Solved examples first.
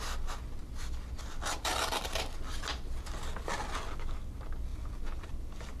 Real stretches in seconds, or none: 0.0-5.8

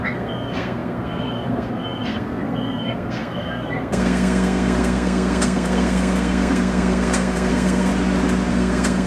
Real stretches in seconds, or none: 7.9-8.5

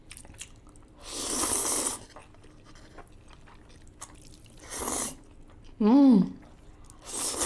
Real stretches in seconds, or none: 0.0-7.5

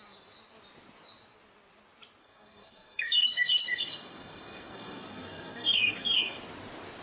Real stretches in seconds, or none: 0.0-2.2; 6.4-7.0

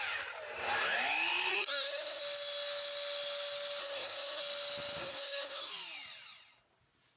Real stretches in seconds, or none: 0.0-1.5; 2.2-3.8; 4.4-5.0; 5.7-7.2

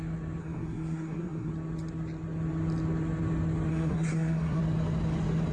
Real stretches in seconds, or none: 0.0-0.4; 1.5-3.7; 4.6-5.5

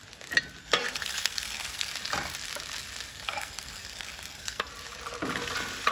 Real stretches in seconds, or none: 0.0-0.6; 1.9-3.1; 4.7-5.9

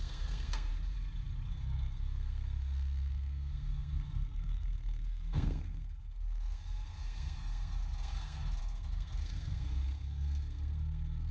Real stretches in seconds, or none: 0.7-1.5